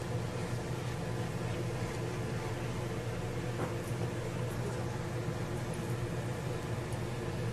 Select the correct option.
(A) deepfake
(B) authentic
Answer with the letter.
B